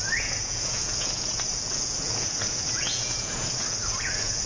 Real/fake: fake